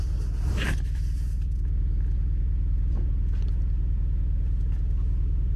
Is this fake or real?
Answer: real